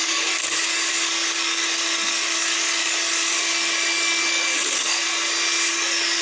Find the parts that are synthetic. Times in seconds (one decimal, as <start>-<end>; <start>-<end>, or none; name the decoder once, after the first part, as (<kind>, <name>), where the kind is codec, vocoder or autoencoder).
0.0-5.0 (codec, DAC); 5.7-6.2